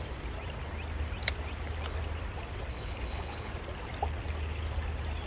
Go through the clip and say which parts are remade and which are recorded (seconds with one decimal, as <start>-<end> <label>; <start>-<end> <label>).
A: 0.0-2.7 recorded; 2.7-3.5 remade; 3.5-5.3 recorded